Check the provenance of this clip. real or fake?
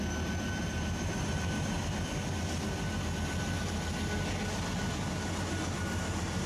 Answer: real